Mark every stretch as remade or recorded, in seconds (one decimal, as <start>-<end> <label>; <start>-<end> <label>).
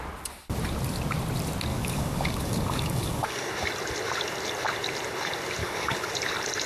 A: 0.0-1.7 recorded; 1.7-3.5 remade; 3.5-5.6 recorded; 5.6-6.1 remade; 6.1-6.7 recorded